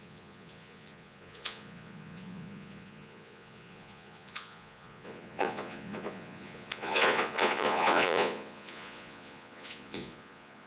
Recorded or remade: remade